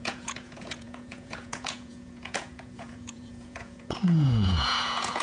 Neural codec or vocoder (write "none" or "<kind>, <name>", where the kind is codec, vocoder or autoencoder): vocoder, Vocos